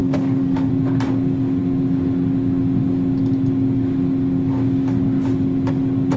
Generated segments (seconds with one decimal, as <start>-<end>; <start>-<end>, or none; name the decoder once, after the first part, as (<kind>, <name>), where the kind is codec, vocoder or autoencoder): 0.0-0.7 (autoencoder, DAC-VAE)